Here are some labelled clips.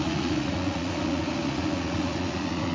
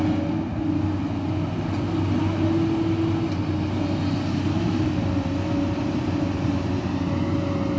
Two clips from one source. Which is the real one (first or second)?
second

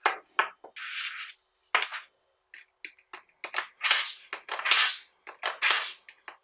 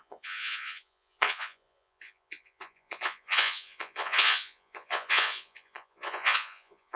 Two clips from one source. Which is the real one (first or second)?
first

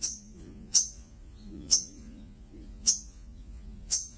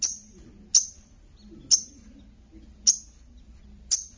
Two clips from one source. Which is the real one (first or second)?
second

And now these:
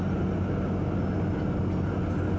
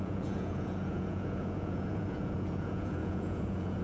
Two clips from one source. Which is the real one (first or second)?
first